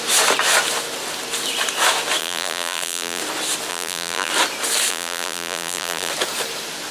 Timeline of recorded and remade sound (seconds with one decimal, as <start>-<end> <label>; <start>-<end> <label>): 0.0-2.2 recorded; 2.2-3.2 remade; 3.2-3.7 recorded; 3.7-4.3 remade; 4.3-4.9 recorded; 4.9-6.1 remade; 6.1-6.9 recorded